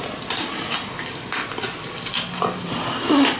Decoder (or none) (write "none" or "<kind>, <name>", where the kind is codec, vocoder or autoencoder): none